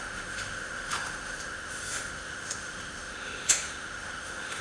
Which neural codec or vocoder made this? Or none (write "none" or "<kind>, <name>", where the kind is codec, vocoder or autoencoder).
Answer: autoencoder, DAC-VAE